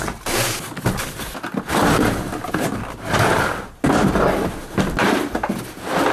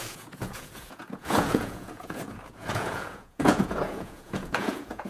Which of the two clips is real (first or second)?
first